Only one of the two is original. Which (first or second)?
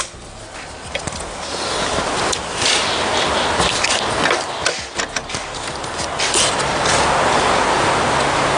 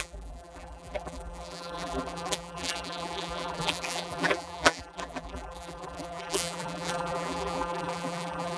first